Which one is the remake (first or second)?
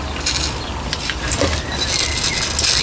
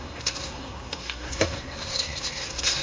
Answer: second